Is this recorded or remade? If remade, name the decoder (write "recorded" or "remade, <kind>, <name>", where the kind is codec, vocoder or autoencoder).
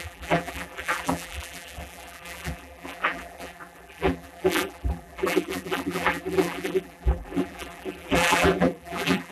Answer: remade, vocoder, BigVGAN v2